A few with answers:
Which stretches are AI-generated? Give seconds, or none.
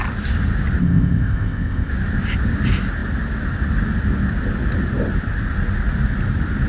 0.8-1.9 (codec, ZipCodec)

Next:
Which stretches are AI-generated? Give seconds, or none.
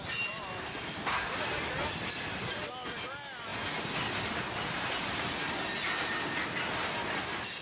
none